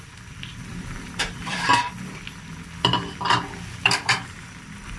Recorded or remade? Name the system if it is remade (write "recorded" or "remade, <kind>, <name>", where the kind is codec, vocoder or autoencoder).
remade, vocoder, BigVGAN v2